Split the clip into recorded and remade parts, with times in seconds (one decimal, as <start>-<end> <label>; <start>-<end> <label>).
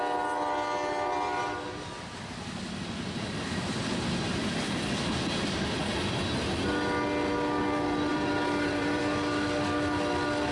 0.0-8.1 recorded; 8.1-9.0 remade; 9.0-10.5 recorded